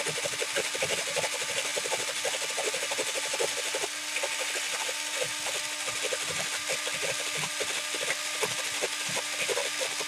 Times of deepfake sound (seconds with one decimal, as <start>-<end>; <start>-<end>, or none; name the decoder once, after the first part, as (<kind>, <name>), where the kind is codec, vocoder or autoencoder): none